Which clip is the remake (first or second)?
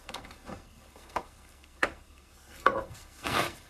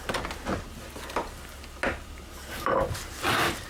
first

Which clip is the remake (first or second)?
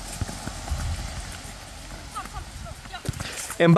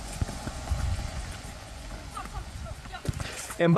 second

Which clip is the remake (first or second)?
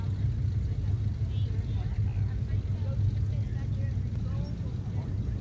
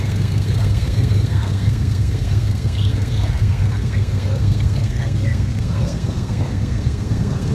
second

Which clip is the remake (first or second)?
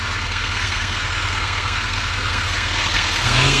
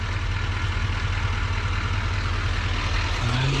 first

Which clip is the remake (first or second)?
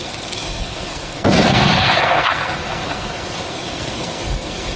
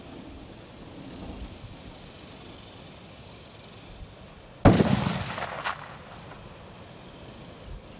first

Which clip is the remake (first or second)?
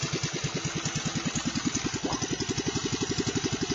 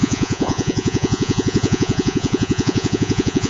second